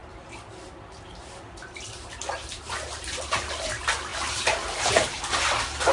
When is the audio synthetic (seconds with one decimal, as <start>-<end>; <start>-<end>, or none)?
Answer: 0.0-3.4